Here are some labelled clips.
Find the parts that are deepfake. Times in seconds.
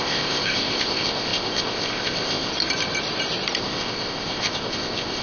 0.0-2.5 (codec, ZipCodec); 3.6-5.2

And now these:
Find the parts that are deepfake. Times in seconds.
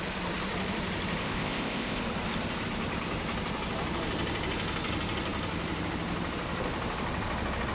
1.2-2.0 (codec, ZipCodec)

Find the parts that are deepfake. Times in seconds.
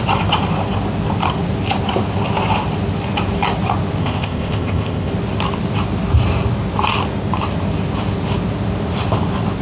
4.0-5.1 (codec, ZipCodec)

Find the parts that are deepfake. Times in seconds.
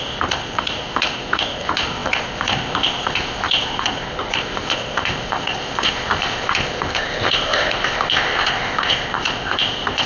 0.0-10.1 (codec, ZipCodec)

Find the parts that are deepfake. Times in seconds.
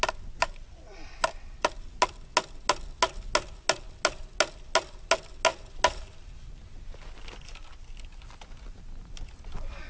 none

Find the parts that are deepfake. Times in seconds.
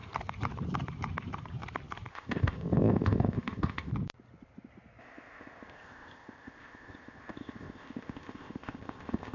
2.1-3.9 (codec, ZipCodec); 5.0-9.3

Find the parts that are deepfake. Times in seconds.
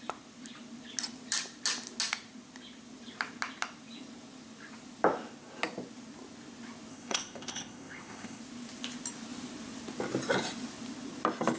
6.9-8.4 (codec, ZipCodec)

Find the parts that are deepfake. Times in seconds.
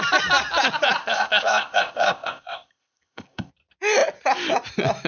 1.0-3.5 (codec, ZipCodec)